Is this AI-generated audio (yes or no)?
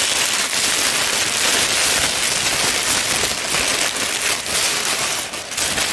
no